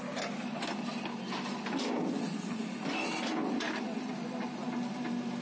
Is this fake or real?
real